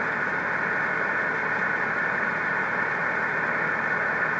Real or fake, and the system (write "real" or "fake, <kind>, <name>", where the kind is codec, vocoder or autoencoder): real